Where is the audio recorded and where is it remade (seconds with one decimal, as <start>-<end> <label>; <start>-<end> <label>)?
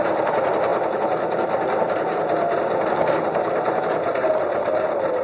0.0-5.2 recorded